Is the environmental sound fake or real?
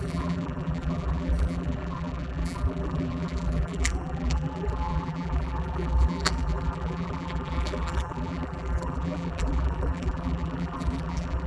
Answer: fake